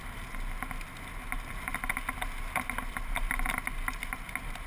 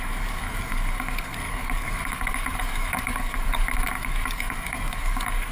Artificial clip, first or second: second